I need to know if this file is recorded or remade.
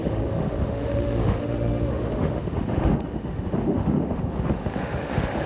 remade